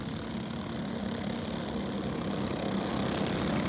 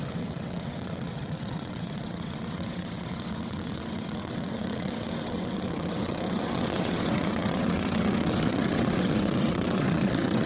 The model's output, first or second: second